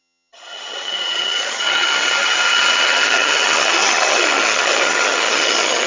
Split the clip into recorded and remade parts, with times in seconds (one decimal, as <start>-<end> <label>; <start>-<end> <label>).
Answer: 0.0-5.9 remade